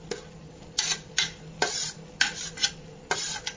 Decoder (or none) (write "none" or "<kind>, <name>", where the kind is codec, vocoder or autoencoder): none